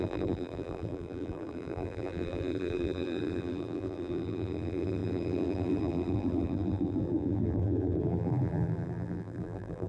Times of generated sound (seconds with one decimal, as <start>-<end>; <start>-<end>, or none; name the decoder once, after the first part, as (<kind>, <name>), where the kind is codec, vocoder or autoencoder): 0.0-9.9 (vocoder, BigVGAN v2)